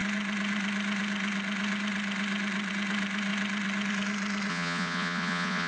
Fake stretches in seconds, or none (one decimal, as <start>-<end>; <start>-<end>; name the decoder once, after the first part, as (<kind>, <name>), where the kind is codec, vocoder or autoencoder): 4.5-5.7 (vocoder, Vocos)